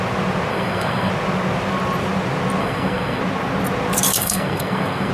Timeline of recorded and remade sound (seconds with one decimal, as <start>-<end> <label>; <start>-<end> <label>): 0.0-0.5 recorded; 0.5-1.1 remade; 1.1-2.6 recorded; 2.6-3.2 remade; 3.2-4.2 recorded; 4.2-5.1 remade